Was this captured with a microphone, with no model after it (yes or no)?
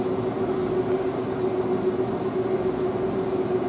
yes